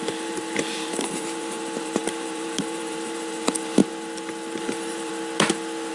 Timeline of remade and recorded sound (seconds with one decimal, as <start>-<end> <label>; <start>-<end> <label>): 0.0-3.8 remade; 3.8-4.6 recorded; 4.6-5.1 remade; 5.1-5.9 recorded